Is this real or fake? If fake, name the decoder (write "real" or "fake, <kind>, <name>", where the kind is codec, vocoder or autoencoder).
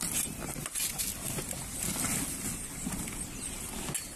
real